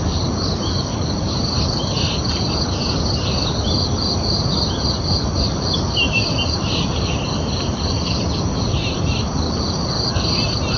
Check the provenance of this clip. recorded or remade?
recorded